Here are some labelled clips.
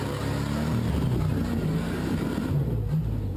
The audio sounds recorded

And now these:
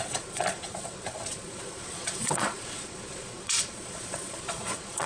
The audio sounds remade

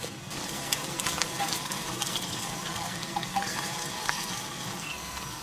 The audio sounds remade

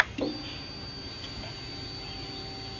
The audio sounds recorded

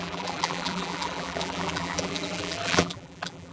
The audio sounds remade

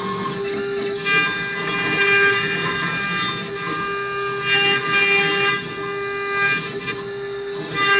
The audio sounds recorded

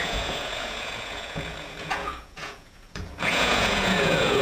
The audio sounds remade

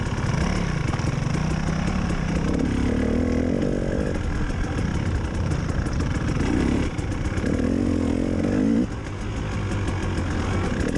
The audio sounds recorded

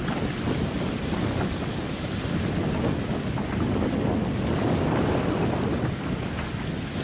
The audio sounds recorded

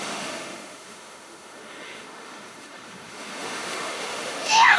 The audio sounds remade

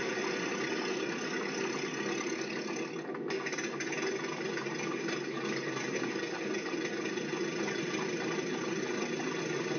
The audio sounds recorded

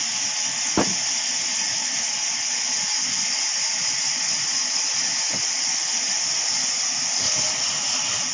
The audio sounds recorded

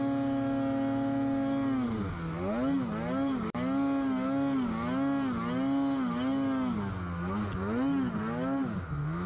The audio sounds recorded